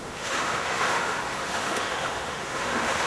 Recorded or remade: remade